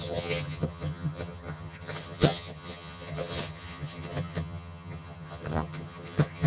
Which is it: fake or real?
fake